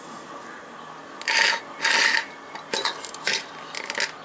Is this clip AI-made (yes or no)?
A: no